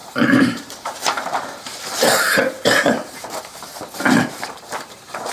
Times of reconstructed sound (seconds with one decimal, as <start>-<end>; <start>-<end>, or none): 0.0-3.7; 4.2-5.3